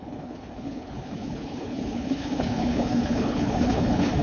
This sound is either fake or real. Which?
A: fake